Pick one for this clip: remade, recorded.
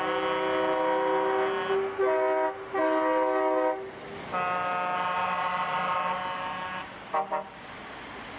recorded